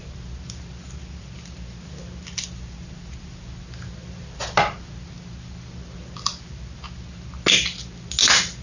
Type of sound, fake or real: real